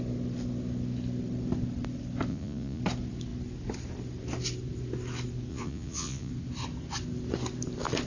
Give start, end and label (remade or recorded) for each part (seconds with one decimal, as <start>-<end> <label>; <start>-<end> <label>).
0.0-2.3 recorded; 2.3-2.8 remade; 2.8-5.5 recorded; 5.5-6.3 remade; 6.3-8.1 recorded

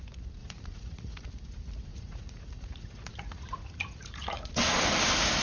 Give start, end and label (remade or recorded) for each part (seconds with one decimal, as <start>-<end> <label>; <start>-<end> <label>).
0.0-0.4 recorded; 0.4-1.3 remade; 1.3-1.9 recorded; 1.9-4.5 remade; 4.5-5.4 recorded